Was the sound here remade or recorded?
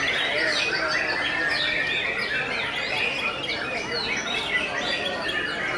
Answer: recorded